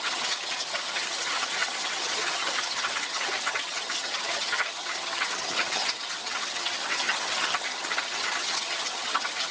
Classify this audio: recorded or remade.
remade